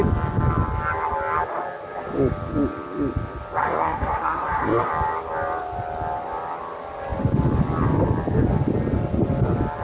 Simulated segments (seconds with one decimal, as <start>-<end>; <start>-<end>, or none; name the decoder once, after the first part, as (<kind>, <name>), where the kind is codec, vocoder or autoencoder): 3.6-4.9 (codec, SNAC)